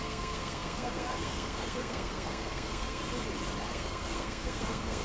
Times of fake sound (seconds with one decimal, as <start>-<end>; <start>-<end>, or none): 0.0-3.0; 3.7-5.0